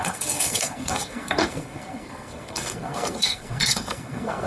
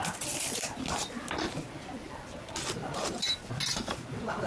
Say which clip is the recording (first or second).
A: second